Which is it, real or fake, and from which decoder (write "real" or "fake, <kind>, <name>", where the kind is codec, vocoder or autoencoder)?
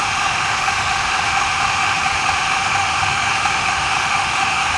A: fake, autoencoder, DAC-VAE